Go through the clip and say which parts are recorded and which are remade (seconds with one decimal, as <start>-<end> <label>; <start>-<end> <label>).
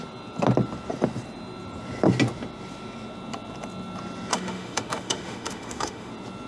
0.0-4.3 recorded; 4.3-6.1 remade; 6.1-6.5 recorded